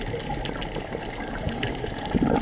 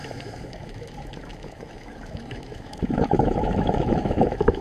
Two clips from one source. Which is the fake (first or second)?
second